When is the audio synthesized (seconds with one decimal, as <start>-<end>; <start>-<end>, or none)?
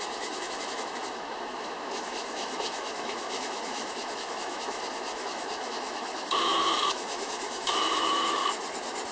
0.0-8.4